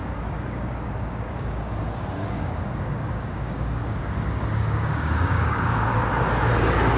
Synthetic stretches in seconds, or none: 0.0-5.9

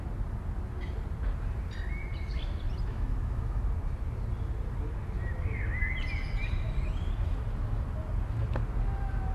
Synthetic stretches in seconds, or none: 2.9-3.6

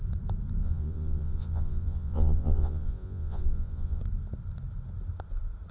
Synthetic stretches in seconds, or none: 0.6-4.0

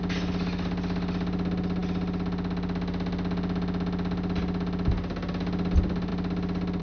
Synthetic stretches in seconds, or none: none